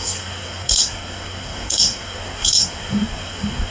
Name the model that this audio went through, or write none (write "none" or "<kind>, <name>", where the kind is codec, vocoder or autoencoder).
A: codec, SNAC